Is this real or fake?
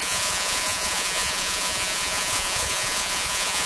fake